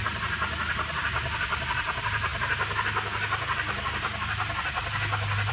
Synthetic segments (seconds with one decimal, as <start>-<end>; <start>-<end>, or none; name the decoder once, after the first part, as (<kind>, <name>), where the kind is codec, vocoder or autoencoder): none